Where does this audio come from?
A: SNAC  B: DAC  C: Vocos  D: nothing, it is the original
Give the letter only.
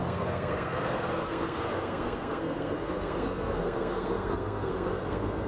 A